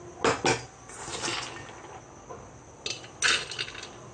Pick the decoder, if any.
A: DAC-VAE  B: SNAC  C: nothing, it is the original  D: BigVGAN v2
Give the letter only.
C